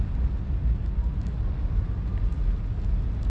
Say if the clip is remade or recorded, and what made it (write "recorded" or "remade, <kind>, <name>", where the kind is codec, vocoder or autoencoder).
recorded